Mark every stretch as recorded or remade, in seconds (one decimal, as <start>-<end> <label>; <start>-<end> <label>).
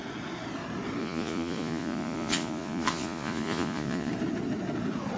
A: 0.0-1.0 recorded; 1.0-4.1 remade; 4.1-5.2 recorded